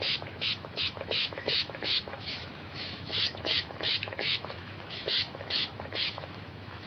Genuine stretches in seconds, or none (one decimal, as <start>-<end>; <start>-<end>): none